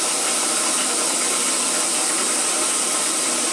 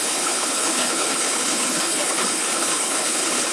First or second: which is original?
first